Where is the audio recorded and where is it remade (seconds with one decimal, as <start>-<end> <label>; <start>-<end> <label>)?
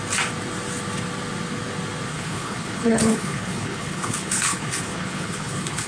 0.0-2.1 recorded; 2.1-5.9 remade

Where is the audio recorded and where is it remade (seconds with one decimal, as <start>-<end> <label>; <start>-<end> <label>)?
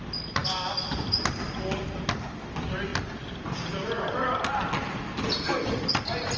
0.0-6.4 recorded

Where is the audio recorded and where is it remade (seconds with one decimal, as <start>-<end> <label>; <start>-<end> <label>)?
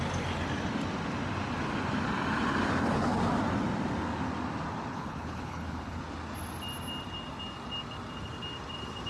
0.0-4.9 recorded; 4.9-6.0 remade; 6.0-9.1 recorded